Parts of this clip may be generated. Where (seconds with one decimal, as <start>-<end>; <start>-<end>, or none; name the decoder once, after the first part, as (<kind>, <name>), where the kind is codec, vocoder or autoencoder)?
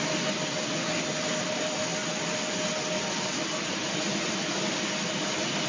none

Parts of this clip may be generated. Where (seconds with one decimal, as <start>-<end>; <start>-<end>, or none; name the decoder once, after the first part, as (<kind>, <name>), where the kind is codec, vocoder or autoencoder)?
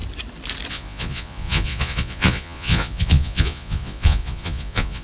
0.7-5.0 (vocoder, Vocos)